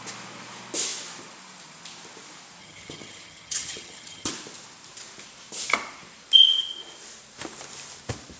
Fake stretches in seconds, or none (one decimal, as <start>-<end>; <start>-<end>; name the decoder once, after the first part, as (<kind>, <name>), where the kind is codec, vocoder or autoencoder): 2.6-4.3 (vocoder, HiFi-GAN)